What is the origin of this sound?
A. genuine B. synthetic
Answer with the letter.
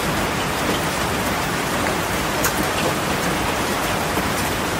B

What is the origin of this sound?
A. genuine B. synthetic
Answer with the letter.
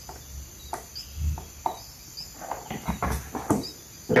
A